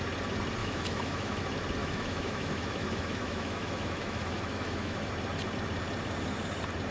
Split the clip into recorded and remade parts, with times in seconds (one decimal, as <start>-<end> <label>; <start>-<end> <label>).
0.0-0.6 recorded; 0.6-1.4 remade; 1.4-1.8 recorded; 1.8-5.1 remade; 5.1-6.9 recorded

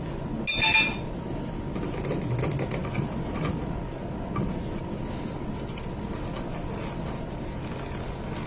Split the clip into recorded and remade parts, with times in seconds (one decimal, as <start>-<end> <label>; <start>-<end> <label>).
0.0-8.5 recorded